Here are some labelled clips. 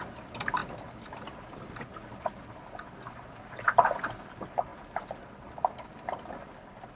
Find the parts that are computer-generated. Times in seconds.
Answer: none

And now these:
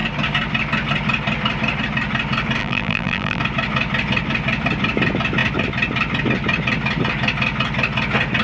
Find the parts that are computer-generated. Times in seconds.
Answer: 2.6-3.4

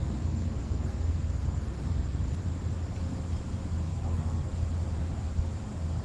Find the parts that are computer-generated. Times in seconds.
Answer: 0.0-2.3; 3.9-4.5

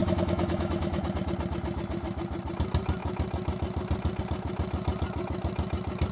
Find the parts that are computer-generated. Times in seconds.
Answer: 0.0-1.0

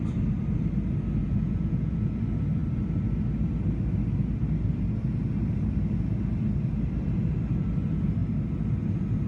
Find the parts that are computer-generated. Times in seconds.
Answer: 1.2-2.2

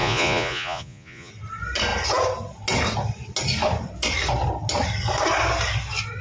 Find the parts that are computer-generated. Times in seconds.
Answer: 0.0-1.3

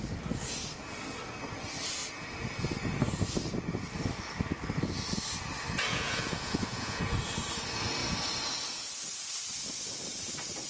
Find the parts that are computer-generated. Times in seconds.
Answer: 5.9-7.0

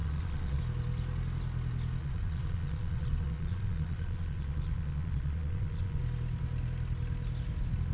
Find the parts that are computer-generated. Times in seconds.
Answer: 0.0-0.6; 2.0-6.0